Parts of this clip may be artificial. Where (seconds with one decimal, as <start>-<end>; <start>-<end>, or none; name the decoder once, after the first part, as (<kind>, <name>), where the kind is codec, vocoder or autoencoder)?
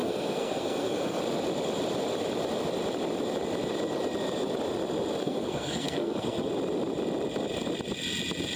0.0-1.2 (codec, SNAC); 5.2-6.5